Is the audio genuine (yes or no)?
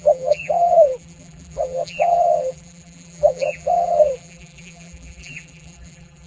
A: no